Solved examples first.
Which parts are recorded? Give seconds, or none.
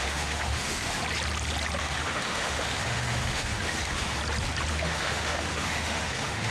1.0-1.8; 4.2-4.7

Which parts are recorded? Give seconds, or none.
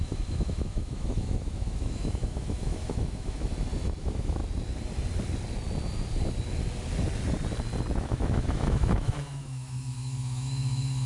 3.5-4.0; 4.4-8.0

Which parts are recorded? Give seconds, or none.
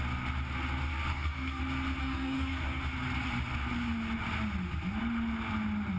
0.0-1.1; 1.6-2.0; 2.8-6.0